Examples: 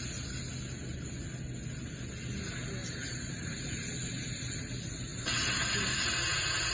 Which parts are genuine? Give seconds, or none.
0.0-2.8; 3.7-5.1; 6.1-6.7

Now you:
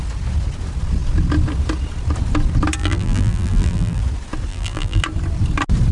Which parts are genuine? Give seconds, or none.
0.0-2.8; 4.0-4.5; 5.0-5.9

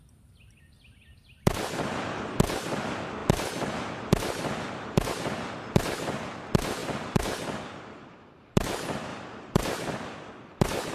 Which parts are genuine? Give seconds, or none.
0.0-9.1; 10.3-10.9

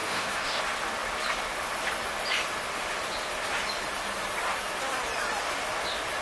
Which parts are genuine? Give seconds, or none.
0.6-6.2

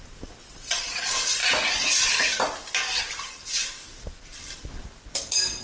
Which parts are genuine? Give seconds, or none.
0.0-0.4; 1.0-5.6

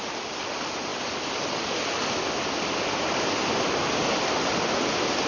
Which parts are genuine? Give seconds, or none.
0.0-5.3